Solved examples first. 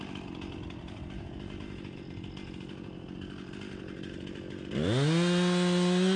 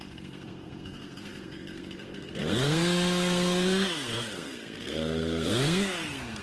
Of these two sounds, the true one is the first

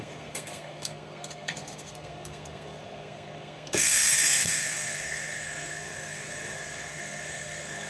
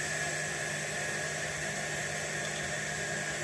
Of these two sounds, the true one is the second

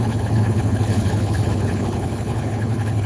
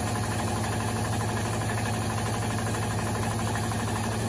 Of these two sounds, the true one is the second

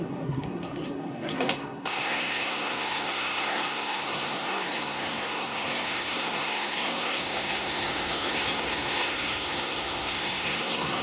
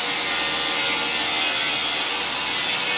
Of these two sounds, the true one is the second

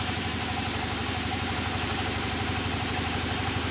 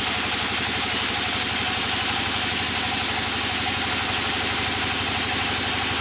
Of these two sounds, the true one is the second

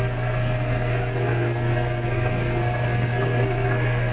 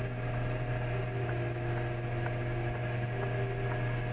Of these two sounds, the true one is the second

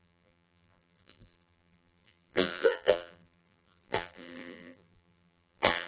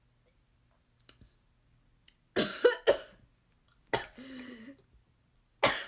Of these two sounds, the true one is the second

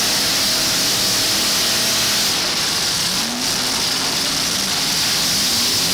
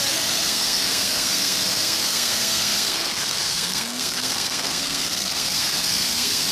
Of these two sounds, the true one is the first